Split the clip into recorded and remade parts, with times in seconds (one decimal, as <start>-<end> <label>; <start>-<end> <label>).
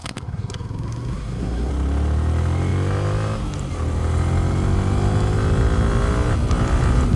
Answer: 0.0-1.7 remade; 1.7-7.2 recorded